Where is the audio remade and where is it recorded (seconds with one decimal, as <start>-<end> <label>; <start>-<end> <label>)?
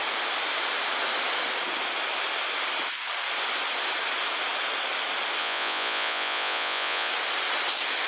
0.0-5.4 recorded; 5.4-7.1 remade; 7.1-8.1 recorded